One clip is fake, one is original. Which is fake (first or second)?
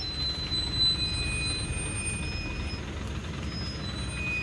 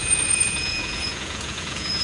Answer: second